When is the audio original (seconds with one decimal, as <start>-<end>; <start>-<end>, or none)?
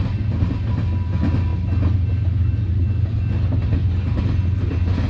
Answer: 0.0-5.1